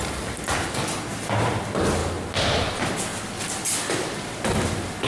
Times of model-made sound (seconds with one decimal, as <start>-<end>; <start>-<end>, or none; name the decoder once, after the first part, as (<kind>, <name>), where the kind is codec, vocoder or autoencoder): none